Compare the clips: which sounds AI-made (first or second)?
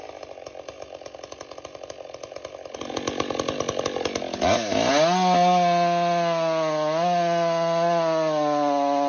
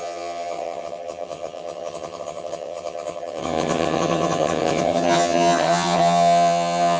second